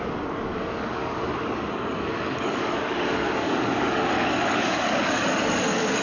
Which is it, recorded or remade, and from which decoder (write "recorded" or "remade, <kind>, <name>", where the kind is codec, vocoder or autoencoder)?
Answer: remade, codec, DAC